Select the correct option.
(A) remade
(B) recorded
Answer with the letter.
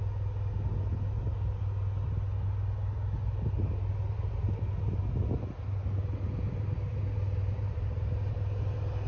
B